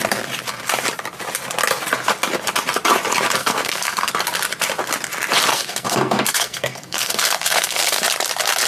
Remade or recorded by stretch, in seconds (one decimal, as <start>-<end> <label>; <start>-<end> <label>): 0.0-3.4 recorded; 3.4-4.1 remade; 4.1-5.5 recorded; 5.5-8.0 remade; 8.0-8.7 recorded